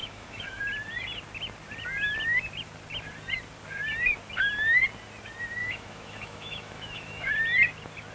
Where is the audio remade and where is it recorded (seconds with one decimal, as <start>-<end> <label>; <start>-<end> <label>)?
0.0-0.6 remade; 0.6-5.6 recorded; 5.6-7.3 remade; 7.3-8.1 recorded

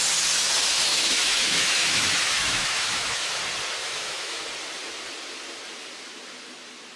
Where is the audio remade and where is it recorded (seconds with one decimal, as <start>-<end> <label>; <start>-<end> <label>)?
0.0-0.9 recorded; 0.9-3.4 remade; 3.4-3.8 recorded; 3.8-4.4 remade; 4.4-7.0 recorded

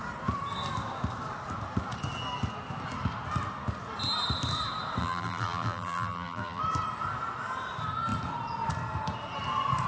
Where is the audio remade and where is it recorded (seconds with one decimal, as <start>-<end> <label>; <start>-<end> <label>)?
0.0-5.0 recorded; 5.0-6.6 remade; 6.6-9.9 recorded

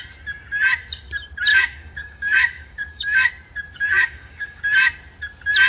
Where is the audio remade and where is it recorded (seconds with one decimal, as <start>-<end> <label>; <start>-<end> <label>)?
0.0-1.5 recorded; 1.5-3.3 remade; 3.3-3.9 recorded; 3.9-4.6 remade; 4.6-5.7 recorded

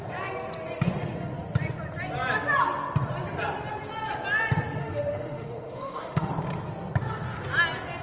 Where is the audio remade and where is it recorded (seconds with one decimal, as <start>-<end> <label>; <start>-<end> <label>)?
0.0-4.8 recorded; 4.8-6.3 remade; 6.3-8.0 recorded